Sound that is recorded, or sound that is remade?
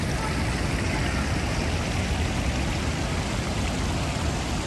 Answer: recorded